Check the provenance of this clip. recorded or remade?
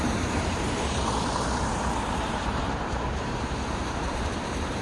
remade